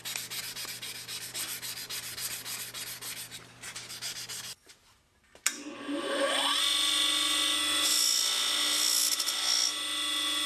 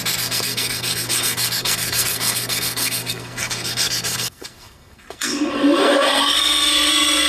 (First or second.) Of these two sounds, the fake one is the second